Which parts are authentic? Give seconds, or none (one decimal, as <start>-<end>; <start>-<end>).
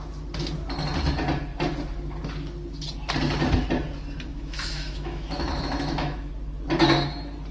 0.0-4.3; 6.3-7.5